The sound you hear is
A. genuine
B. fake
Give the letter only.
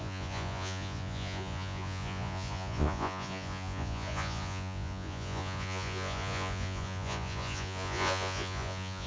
B